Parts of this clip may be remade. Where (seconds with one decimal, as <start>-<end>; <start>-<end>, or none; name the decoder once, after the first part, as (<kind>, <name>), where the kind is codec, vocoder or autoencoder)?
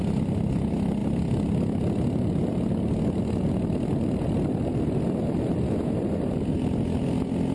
none